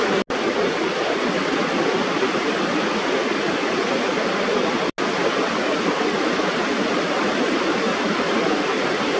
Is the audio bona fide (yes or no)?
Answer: yes